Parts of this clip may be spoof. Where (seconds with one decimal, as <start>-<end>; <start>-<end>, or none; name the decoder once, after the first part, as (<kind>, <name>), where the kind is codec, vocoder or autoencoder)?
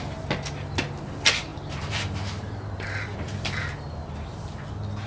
1.5-4.6 (vocoder, BigVGAN v2)